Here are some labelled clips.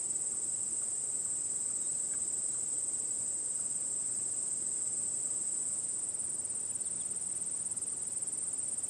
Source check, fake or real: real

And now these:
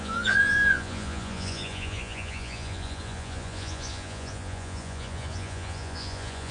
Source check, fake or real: fake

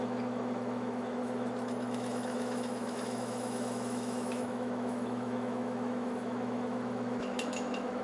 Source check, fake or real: fake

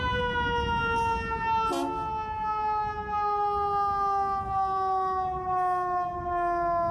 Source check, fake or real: real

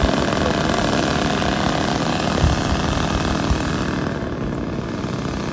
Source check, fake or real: real